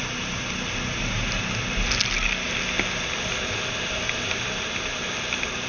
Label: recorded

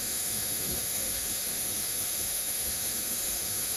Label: remade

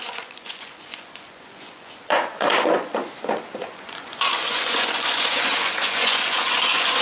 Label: remade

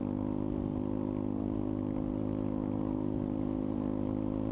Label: recorded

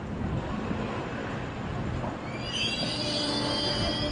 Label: recorded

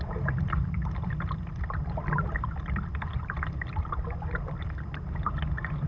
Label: remade